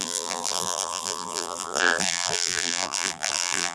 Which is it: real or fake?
fake